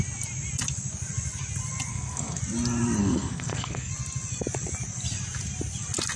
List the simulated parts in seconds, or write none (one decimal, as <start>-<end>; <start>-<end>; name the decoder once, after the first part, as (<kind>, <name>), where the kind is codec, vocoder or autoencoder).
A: 1.9-2.4 (codec, SNAC); 3.0-3.9